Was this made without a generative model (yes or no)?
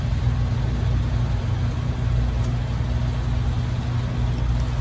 yes